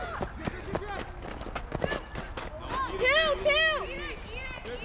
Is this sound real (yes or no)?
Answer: yes